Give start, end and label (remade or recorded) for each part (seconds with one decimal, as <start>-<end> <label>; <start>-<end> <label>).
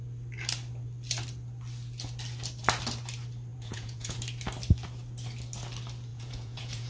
0.0-3.5 recorded; 3.5-4.2 remade; 4.2-6.1 recorded; 6.1-6.9 remade